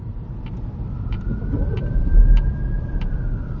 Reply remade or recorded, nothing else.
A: remade